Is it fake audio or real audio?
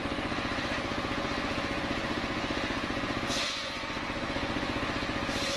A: fake